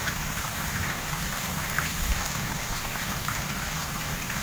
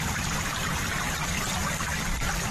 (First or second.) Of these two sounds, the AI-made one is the first